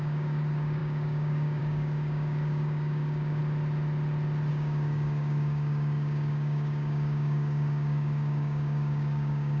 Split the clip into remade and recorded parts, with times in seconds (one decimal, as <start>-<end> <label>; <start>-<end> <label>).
0.0-3.4 remade; 3.4-4.5 recorded; 4.5-9.6 remade